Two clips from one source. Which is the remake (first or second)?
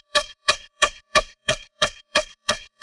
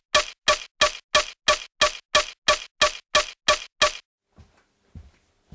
first